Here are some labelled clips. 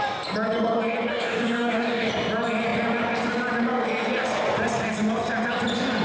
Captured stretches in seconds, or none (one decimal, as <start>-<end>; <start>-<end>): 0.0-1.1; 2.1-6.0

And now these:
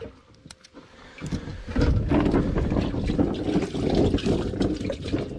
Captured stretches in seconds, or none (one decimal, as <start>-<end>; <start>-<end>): 0.0-5.4

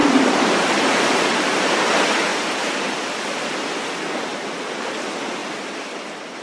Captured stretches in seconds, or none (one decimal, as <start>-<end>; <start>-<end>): 1.9-2.3; 2.9-4.3; 4.9-6.4

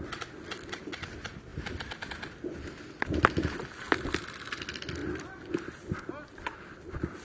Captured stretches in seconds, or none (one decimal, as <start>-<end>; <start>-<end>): 0.0-7.2

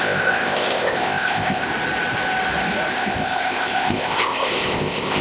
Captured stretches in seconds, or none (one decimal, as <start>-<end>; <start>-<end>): 1.7-2.9

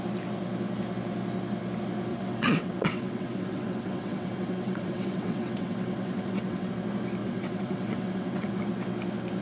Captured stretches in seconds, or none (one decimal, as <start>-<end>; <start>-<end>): 0.0-2.1; 6.7-7.2; 8.6-9.4